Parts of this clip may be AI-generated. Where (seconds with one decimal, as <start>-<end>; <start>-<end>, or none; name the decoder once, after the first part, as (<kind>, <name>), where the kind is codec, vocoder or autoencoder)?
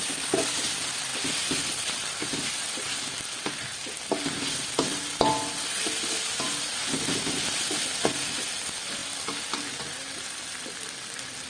none